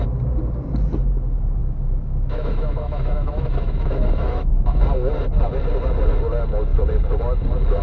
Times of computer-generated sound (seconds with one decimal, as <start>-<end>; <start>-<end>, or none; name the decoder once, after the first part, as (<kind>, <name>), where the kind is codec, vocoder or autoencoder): 1.6-4.8 (autoencoder, DAC-VAE)